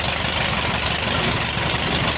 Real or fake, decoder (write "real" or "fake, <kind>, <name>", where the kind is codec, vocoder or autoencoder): real